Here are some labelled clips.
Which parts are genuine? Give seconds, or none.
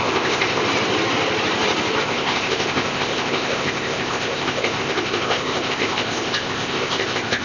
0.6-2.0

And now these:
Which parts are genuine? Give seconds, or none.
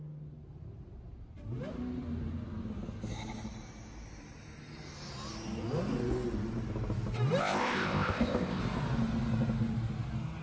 0.0-7.4; 8.6-10.4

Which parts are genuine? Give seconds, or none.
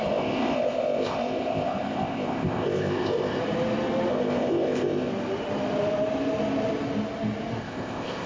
3.4-4.1; 5.1-7.6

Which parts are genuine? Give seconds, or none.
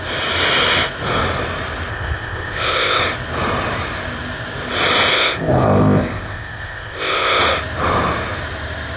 0.0-1.9; 3.0-5.1; 7.4-9.0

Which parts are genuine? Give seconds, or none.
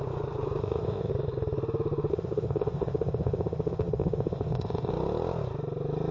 0.0-0.6; 1.1-2.1; 4.9-6.1